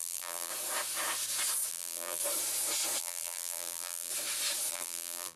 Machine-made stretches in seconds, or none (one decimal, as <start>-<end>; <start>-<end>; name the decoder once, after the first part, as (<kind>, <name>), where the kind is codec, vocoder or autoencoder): 0.0-0.5 (vocoder, BigVGAN v2); 1.7-2.2; 3.0-4.1; 4.7-5.4